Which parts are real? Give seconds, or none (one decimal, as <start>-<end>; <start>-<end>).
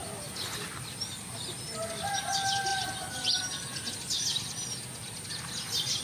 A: 0.0-6.0